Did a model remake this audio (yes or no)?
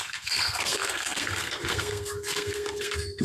yes